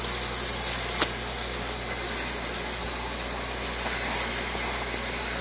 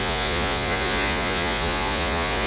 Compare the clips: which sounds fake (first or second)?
second